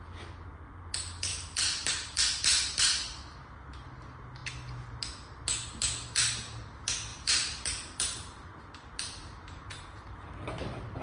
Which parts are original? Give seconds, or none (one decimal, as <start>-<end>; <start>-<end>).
0.0-1.3; 2.2-7.1; 10.3-11.0